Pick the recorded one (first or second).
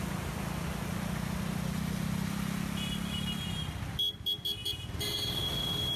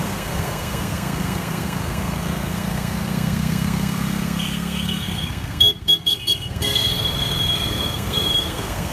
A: first